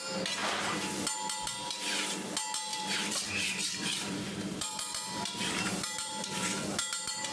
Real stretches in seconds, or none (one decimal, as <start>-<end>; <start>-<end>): 0.0-0.4; 1.0-2.7; 6.3-7.3